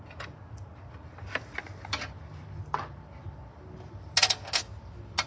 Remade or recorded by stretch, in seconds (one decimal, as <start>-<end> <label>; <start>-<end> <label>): 0.0-5.3 recorded